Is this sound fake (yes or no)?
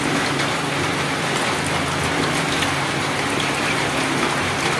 no